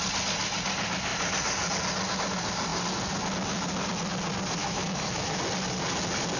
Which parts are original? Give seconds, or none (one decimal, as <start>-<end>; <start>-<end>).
0.0-4.6; 5.4-6.4